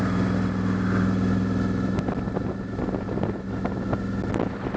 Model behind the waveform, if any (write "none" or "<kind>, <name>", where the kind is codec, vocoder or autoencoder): none